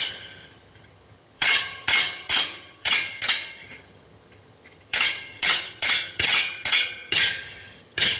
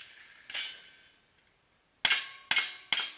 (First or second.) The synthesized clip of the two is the first